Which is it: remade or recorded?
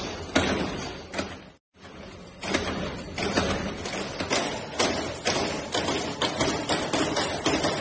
recorded